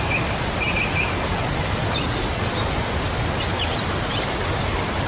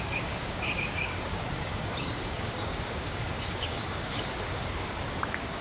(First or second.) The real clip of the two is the first